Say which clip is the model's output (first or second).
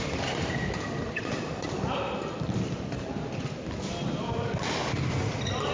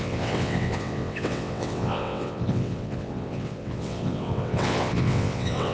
second